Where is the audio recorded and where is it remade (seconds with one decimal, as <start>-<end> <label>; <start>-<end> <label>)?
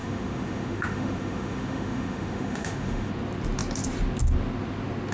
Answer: 0.0-3.1 remade; 3.1-5.1 recorded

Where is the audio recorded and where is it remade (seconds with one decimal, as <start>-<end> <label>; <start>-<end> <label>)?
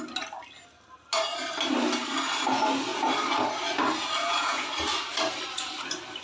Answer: 0.0-4.2 recorded; 4.2-4.7 remade; 4.7-6.2 recorded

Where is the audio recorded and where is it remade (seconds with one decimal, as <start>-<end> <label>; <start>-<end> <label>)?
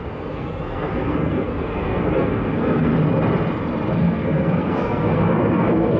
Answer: 0.0-2.9 remade; 2.9-4.0 recorded; 4.0-6.0 remade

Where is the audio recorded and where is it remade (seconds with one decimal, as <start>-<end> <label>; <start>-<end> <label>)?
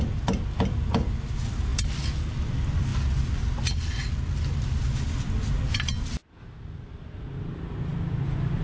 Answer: 0.0-8.6 recorded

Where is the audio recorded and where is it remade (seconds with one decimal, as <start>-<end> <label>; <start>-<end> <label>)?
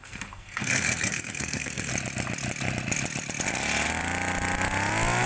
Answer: 0.0-1.9 remade; 1.9-5.3 recorded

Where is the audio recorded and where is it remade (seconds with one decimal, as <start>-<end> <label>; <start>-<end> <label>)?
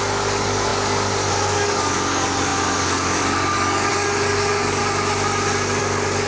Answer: 0.0-4.8 remade; 4.8-5.8 recorded; 5.8-6.3 remade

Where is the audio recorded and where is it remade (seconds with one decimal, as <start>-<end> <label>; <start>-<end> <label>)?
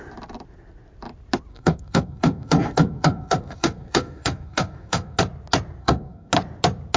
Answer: 0.0-1.5 recorded; 1.5-5.2 remade; 5.2-5.8 recorded; 5.8-6.3 remade; 6.3-7.0 recorded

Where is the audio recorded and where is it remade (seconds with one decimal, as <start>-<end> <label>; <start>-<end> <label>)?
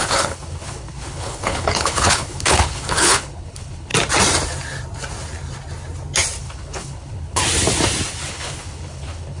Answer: 0.0-3.9 remade; 3.9-6.4 recorded; 6.4-7.4 remade; 7.4-8.3 recorded; 8.3-9.4 remade